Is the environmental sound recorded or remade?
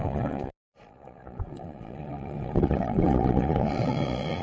remade